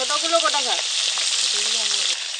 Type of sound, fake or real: real